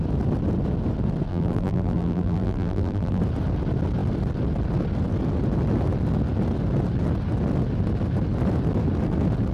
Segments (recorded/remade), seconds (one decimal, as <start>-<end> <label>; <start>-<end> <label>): 0.0-1.3 recorded; 1.3-3.2 remade; 3.2-9.5 recorded